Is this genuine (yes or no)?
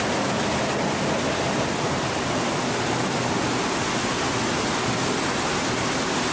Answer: yes